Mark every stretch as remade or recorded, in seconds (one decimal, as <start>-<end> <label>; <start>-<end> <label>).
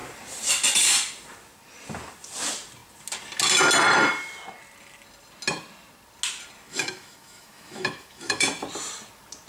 0.0-6.7 recorded; 6.7-8.5 remade; 8.5-9.5 recorded